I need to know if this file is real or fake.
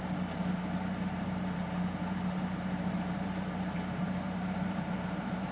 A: fake